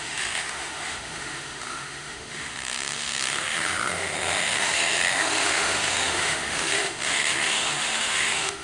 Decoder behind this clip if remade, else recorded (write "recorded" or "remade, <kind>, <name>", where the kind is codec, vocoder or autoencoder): remade, autoencoder, DAC-VAE